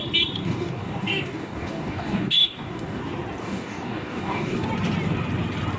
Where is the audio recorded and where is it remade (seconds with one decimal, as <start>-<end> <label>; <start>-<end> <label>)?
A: 0.0-0.4 recorded; 0.4-3.0 remade; 3.0-3.4 recorded; 3.4-4.7 remade; 4.7-5.8 recorded